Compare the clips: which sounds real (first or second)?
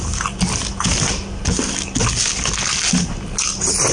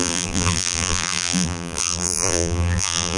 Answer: first